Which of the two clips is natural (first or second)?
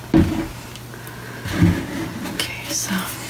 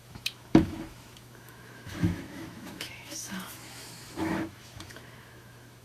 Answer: first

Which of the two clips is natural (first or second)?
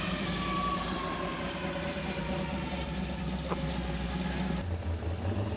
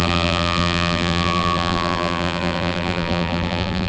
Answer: first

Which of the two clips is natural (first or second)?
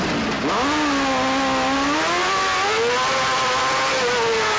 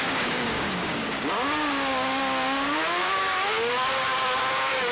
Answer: first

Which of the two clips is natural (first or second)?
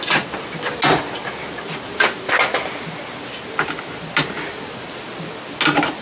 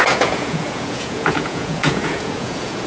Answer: first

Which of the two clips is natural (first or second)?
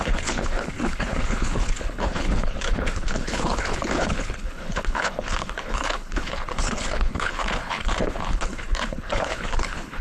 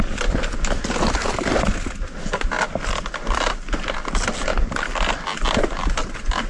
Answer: second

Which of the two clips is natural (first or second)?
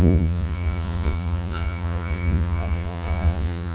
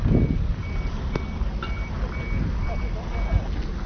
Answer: second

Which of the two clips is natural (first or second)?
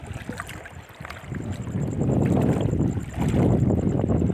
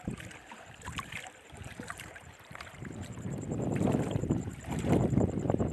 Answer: first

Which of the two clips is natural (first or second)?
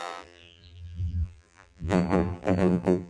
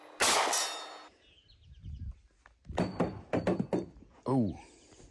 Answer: second